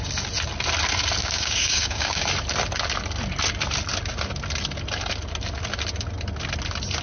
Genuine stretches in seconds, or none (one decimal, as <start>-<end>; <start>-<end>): 0.0-1.2; 2.2-7.0